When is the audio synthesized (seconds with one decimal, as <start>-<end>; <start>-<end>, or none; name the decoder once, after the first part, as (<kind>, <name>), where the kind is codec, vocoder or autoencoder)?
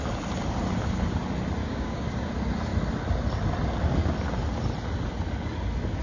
1.6-2.3 (codec, DAC)